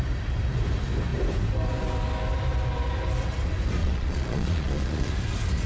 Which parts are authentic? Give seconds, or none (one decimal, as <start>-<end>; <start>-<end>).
0.0-3.8; 5.1-5.7